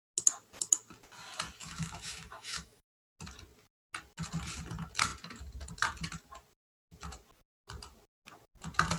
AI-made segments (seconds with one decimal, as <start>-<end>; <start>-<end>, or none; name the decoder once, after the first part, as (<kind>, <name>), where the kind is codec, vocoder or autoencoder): 1.6-3.1 (autoencoder, DAC-VAE)